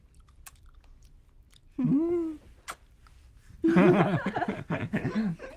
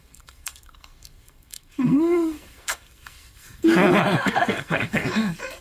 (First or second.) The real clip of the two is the first